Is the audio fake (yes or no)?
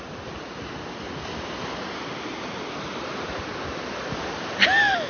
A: no